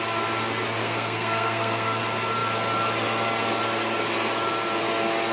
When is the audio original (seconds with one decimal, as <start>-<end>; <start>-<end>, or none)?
0.0-0.8; 2.0-5.3